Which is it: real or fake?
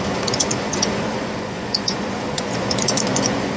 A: fake